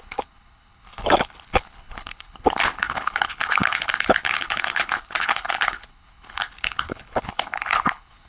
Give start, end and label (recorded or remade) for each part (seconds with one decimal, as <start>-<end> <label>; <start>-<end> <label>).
0.0-8.3 remade